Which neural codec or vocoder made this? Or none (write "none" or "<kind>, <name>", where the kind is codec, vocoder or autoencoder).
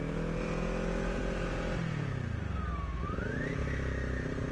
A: none